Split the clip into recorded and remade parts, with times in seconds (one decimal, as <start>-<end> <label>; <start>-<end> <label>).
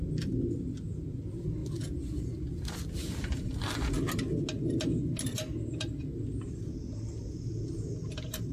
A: 0.0-3.0 recorded; 3.0-3.9 remade; 3.9-8.5 recorded